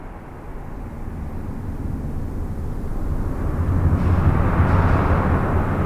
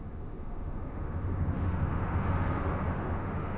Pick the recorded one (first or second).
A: first